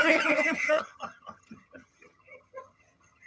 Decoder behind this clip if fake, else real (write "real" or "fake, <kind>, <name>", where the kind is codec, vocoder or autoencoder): fake, vocoder, HiFi-GAN